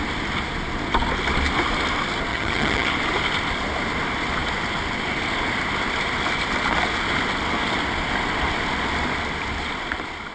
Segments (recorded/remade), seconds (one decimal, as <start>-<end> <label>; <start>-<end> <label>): 0.0-2.3 recorded; 2.3-2.9 remade; 2.9-10.3 recorded